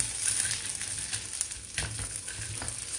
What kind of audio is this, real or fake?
real